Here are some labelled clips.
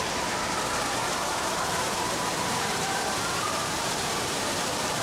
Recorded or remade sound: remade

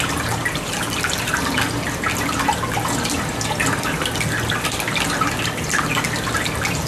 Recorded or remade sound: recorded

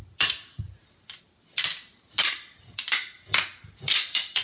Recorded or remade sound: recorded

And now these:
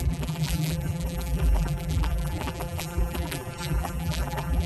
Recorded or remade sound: remade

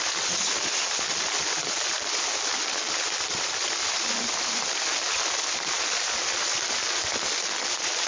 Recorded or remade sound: recorded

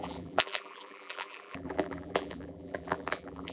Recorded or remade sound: remade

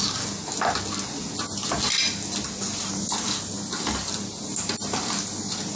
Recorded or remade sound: recorded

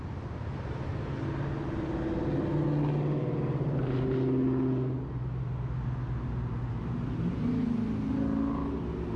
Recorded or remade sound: recorded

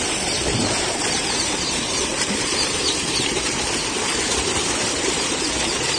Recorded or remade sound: remade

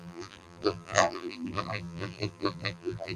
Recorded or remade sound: remade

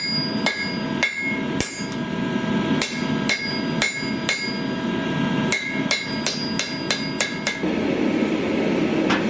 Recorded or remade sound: recorded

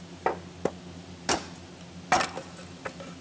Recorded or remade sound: recorded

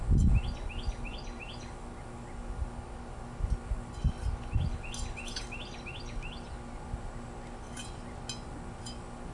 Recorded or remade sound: recorded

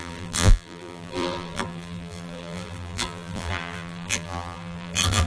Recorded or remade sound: remade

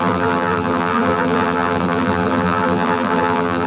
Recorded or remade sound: remade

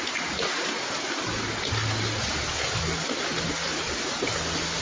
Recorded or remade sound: recorded